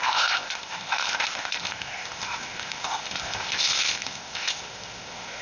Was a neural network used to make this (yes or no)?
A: yes